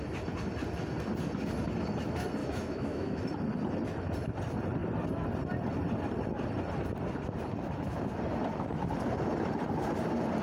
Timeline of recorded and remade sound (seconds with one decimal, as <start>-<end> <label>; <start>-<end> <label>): 0.0-2.4 recorded; 2.4-3.2 remade; 3.2-10.4 recorded